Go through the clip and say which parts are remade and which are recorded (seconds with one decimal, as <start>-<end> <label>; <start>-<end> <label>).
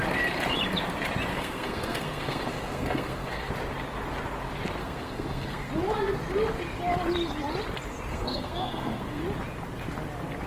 0.0-1.3 recorded; 1.3-3.5 remade; 3.5-4.8 recorded; 4.8-5.7 remade; 5.7-8.1 recorded; 8.1-9.2 remade; 9.2-10.5 recorded